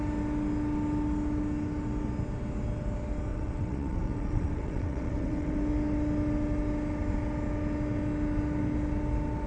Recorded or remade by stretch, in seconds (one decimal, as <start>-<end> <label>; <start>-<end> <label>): 0.0-3.3 recorded; 3.3-5.6 remade; 5.6-9.5 recorded